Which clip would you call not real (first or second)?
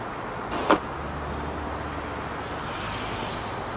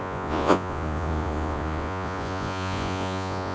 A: second